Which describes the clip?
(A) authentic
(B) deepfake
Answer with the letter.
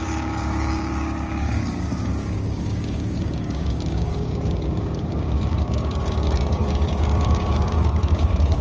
B